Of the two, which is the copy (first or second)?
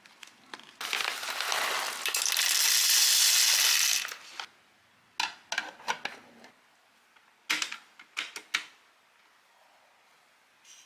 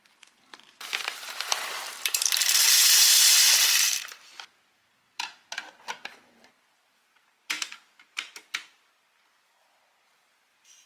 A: second